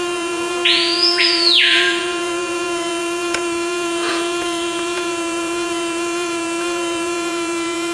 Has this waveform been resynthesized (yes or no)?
yes